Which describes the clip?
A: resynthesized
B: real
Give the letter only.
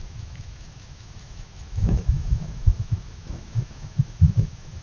A